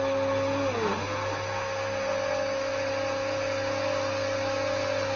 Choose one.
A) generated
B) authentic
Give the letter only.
B